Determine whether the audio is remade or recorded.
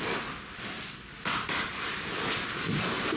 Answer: recorded